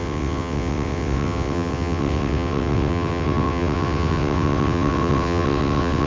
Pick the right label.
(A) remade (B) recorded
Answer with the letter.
A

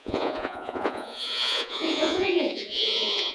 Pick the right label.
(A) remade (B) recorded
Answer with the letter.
A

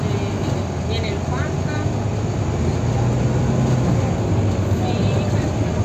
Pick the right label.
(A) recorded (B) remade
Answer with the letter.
A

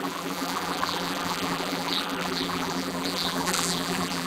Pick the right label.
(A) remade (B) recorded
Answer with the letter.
A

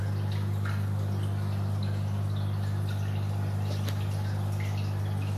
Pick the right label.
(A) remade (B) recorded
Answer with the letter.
B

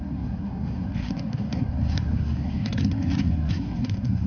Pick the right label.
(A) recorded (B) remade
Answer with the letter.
B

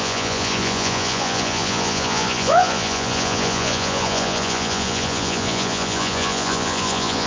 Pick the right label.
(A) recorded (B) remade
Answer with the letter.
B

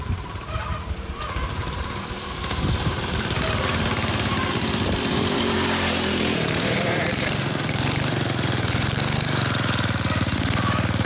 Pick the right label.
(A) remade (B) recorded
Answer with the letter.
A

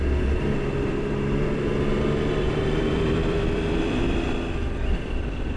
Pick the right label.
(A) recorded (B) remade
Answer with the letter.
B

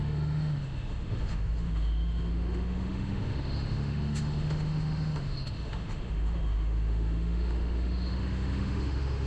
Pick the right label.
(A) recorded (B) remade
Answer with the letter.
B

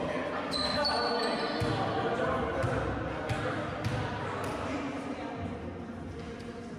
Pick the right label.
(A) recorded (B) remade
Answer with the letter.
A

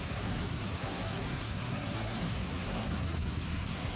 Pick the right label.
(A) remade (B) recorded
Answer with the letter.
A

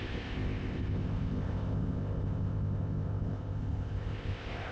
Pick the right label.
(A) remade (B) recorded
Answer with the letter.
A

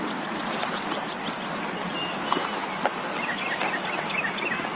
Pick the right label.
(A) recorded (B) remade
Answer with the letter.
A